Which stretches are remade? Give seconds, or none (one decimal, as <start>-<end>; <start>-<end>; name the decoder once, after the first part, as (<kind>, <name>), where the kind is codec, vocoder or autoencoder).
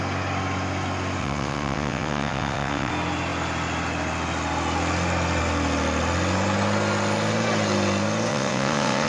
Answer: 1.2-2.9 (vocoder, WaveNeXt); 8.3-9.1